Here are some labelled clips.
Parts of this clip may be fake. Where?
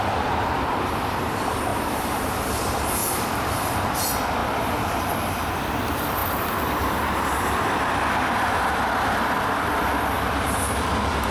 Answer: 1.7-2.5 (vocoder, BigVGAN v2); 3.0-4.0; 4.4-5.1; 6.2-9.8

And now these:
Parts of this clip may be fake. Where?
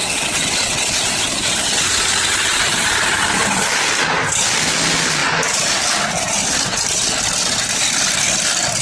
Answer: 0.0-1.1 (vocoder, WaveNeXt)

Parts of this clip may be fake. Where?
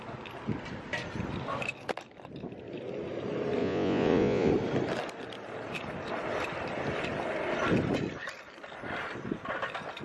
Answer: 3.6-4.5 (vocoder, Vocos)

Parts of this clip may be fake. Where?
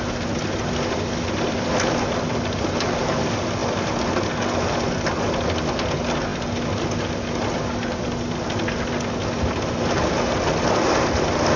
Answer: none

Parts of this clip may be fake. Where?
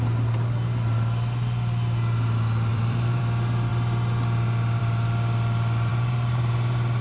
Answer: 2.7-3.2 (vocoder, BigVGAN v2); 5.9-7.0